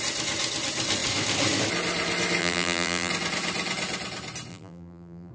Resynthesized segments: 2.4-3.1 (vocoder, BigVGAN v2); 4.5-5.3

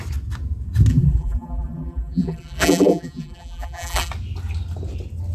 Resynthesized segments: 0.9-4.1 (vocoder, BigVGAN v2)

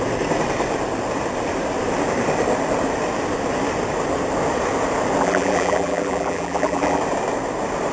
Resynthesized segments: 5.2-7.0 (vocoder, BigVGAN v2)

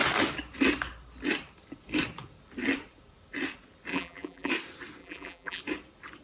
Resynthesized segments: 3.9-4.5 (vocoder, BigVGAN v2); 5.0-5.6